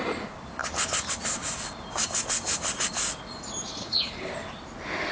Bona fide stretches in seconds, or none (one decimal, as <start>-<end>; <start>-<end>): 0.0-3.8; 4.3-5.1

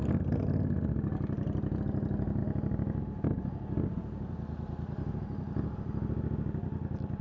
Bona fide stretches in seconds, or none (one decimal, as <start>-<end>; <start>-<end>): 0.0-7.2

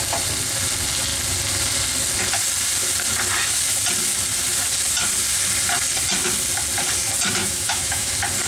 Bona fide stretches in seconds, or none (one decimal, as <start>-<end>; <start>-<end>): 0.0-7.4; 8.1-8.5